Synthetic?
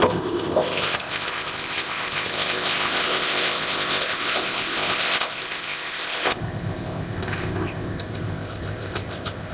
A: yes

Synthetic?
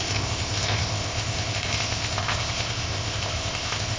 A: yes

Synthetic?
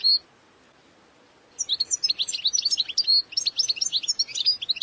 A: no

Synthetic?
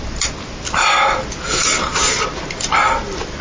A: no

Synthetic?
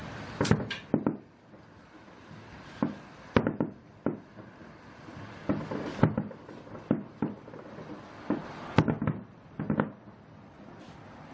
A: no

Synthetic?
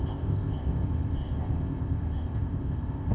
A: yes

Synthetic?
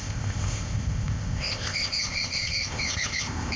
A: yes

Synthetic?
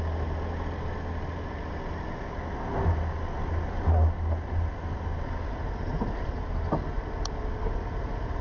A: no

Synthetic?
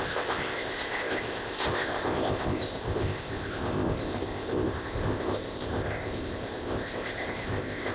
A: yes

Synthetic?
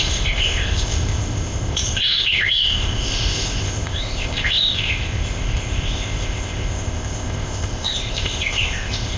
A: yes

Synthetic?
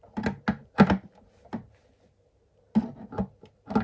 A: no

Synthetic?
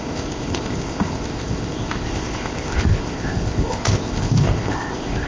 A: yes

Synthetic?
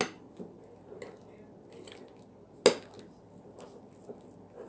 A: no